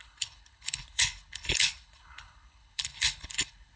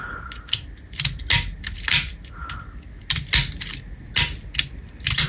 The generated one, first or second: first